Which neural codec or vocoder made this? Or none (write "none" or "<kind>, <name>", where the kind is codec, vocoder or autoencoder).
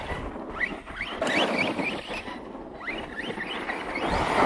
none